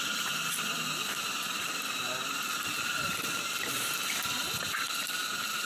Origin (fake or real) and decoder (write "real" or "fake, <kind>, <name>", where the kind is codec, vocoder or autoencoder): real